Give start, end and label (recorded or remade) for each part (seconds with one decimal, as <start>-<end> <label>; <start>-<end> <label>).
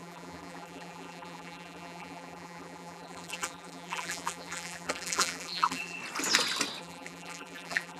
0.0-6.0 remade; 6.0-6.8 recorded; 6.8-8.0 remade